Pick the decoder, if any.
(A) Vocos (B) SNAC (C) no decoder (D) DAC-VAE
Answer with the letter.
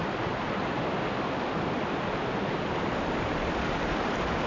C